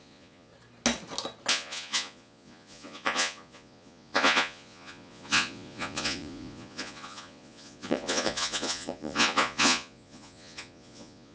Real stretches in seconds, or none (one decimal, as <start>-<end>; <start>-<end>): 0.5-1.5